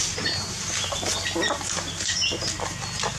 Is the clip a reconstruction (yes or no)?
no